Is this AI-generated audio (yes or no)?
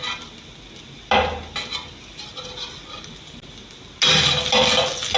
no